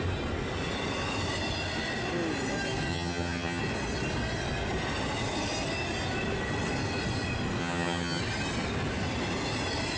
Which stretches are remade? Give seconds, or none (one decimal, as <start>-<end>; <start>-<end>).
2.9-3.6; 7.6-8.2